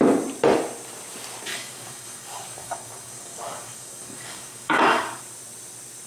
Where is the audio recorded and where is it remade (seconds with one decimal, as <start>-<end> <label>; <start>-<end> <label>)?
0.0-1.5 recorded; 1.5-5.2 remade; 5.2-6.1 recorded